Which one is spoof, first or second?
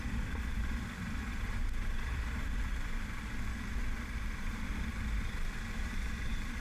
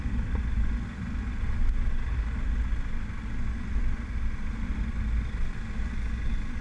first